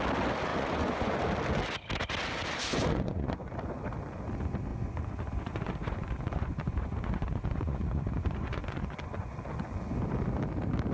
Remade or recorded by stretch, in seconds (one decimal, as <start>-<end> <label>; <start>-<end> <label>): 0.0-0.5 recorded; 0.5-1.2 remade; 1.2-2.7 recorded; 2.7-3.5 remade; 3.5-4.7 recorded; 4.7-9.4 remade; 9.4-10.9 recorded